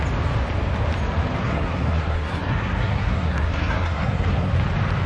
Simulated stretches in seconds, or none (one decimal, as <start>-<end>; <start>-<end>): 1.4-4.5